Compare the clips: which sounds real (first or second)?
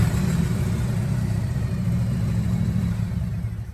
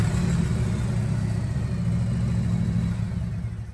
second